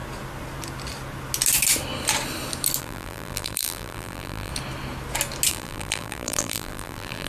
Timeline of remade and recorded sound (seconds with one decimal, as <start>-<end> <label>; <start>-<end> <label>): 0.0-2.8 recorded; 2.8-4.5 remade; 4.5-5.5 recorded; 5.5-7.3 remade